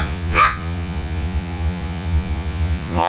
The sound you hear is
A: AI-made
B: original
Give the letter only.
A